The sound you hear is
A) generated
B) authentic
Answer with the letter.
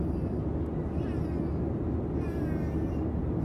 B